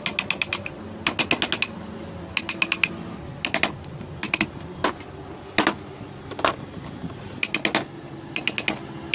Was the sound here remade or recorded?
recorded